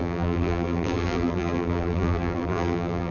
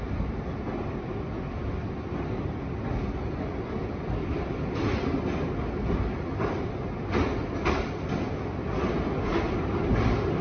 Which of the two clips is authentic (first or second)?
second